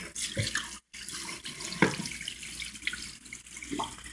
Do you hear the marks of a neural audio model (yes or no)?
no